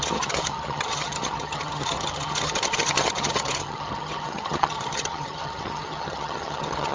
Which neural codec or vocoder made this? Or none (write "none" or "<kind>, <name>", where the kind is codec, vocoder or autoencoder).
vocoder, HiFi-GAN